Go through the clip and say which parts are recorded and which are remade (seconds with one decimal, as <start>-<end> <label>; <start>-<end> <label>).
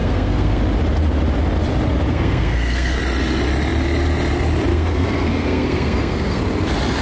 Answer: 0.0-0.6 remade; 0.6-2.1 recorded; 2.1-3.0 remade; 3.0-4.7 recorded; 4.7-6.4 remade; 6.4-7.0 recorded